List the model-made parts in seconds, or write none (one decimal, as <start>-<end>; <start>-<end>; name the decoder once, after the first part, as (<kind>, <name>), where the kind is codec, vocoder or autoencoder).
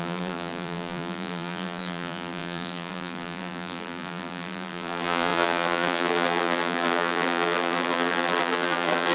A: 0.0-9.1 (vocoder, BigVGAN v2)